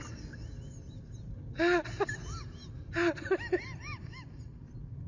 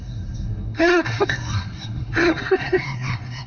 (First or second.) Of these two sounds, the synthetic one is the second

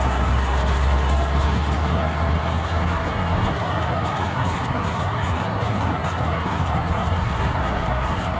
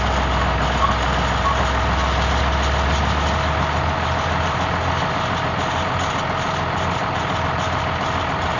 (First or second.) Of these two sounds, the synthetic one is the first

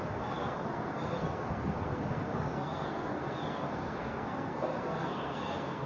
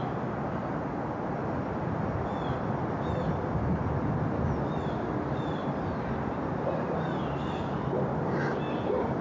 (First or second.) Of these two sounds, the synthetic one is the first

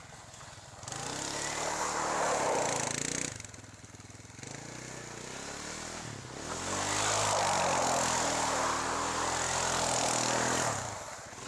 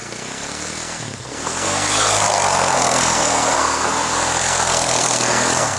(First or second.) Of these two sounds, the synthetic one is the second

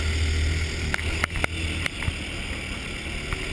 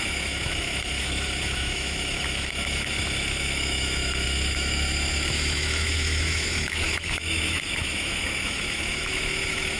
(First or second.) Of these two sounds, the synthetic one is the second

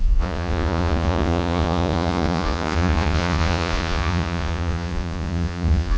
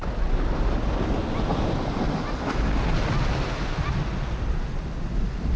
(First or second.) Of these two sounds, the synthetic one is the first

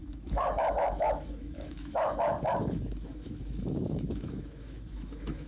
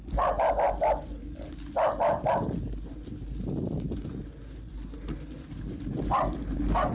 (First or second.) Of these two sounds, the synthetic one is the first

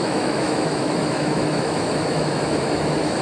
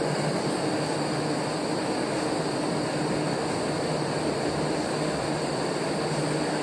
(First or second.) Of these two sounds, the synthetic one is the first